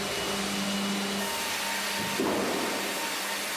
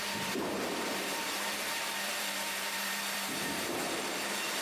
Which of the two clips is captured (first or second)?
first